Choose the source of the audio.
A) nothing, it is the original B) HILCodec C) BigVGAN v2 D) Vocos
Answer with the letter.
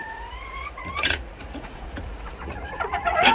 D